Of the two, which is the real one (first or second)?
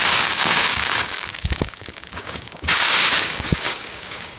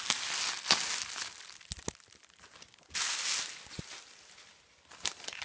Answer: second